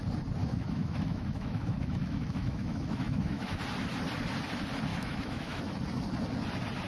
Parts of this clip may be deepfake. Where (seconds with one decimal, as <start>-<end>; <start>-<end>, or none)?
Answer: 0.4-3.6; 4.9-5.6